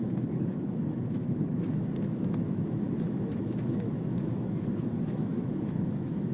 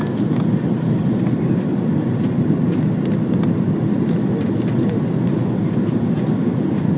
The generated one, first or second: first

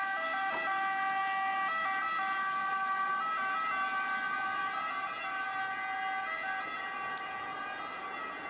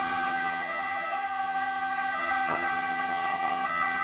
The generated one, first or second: second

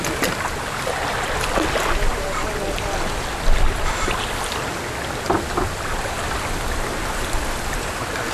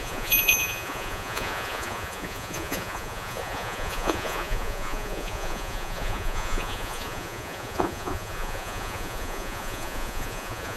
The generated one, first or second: second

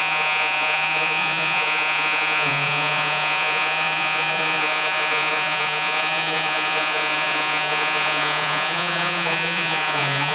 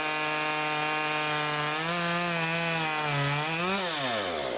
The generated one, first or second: first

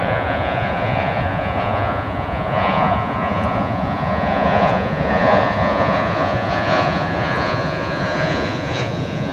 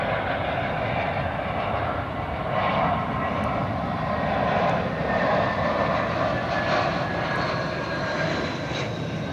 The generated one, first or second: first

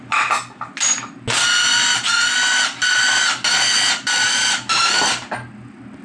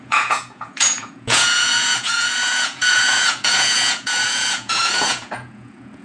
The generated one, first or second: second